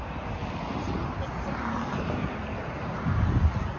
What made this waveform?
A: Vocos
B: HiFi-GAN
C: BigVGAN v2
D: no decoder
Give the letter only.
D